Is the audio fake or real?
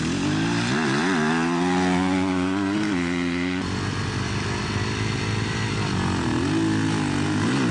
real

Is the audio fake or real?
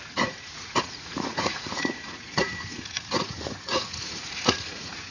fake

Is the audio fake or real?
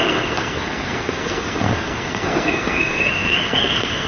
fake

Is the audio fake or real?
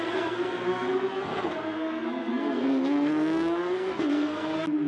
fake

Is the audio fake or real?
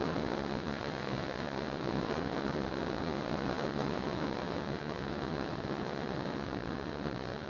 fake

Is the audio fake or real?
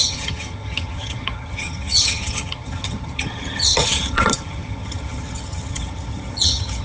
fake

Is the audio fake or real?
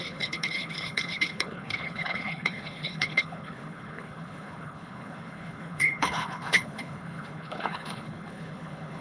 fake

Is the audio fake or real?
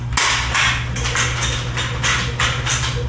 real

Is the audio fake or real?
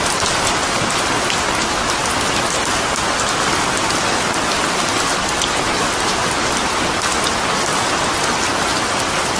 real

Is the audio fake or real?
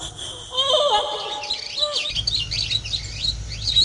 real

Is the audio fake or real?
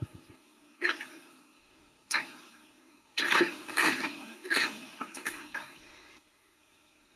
fake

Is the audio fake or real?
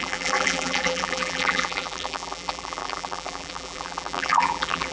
fake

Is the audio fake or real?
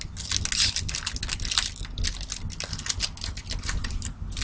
real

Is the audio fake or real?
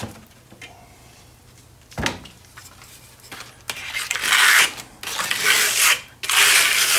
real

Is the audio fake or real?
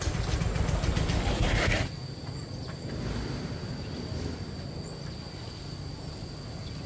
real